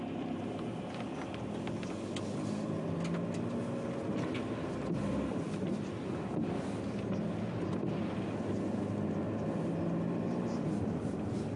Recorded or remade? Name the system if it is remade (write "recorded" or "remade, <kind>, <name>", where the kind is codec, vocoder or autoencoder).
recorded